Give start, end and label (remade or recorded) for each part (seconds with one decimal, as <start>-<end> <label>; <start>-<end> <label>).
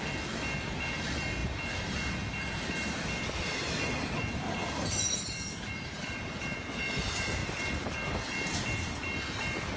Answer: 0.0-9.8 recorded